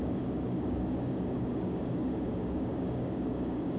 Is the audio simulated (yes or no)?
yes